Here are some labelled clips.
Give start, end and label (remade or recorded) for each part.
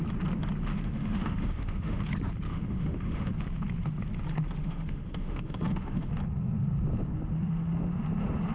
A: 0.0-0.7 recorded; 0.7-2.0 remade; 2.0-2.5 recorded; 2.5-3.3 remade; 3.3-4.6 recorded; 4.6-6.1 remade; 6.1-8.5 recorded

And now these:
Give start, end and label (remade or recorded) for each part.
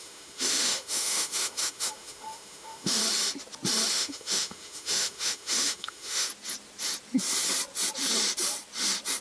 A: 0.0-3.0 remade; 3.0-3.9 recorded; 3.9-6.3 remade; 6.3-9.2 recorded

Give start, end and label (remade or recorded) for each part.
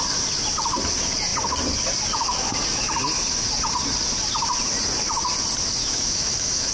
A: 0.0-5.8 recorded; 5.8-6.7 remade